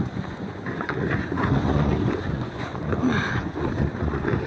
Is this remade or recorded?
remade